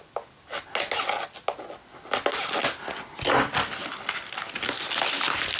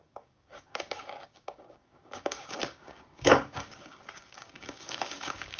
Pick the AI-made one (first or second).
second